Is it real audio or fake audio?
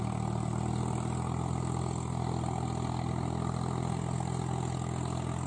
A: real